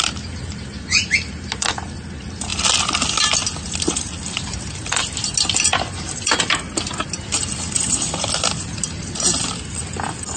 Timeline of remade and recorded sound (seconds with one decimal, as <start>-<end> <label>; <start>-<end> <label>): 0.0-10.4 recorded